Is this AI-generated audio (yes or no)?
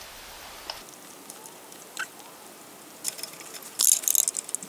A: no